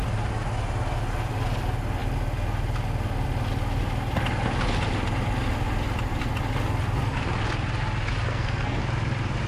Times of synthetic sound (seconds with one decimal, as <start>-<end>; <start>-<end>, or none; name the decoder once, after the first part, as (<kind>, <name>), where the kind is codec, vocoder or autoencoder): 8.3-8.8 (codec, SNAC)